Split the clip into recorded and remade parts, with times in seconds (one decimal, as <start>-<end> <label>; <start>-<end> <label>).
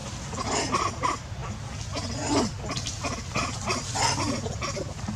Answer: 0.0-5.2 recorded